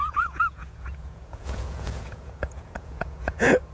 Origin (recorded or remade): remade